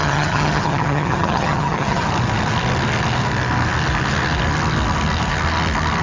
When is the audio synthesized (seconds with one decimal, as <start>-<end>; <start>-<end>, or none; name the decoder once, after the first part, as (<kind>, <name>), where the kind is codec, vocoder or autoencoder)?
0.0-2.1 (vocoder, HiFi-GAN)